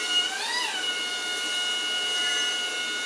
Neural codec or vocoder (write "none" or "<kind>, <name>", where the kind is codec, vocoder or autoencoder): none